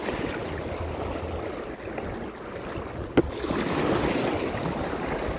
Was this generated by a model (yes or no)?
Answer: no